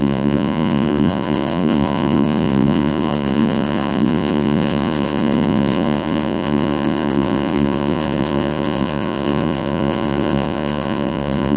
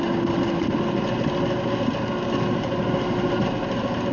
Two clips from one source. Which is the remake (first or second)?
first